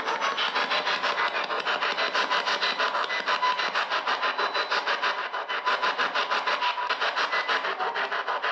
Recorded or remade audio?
recorded